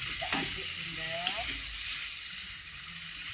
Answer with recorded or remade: recorded